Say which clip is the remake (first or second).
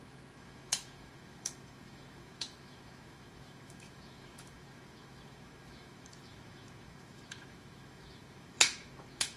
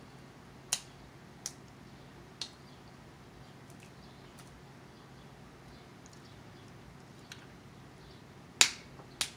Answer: first